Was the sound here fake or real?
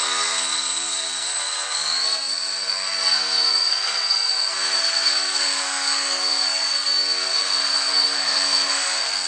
fake